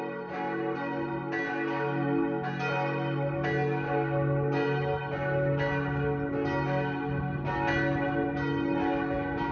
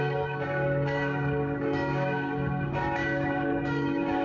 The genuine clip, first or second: first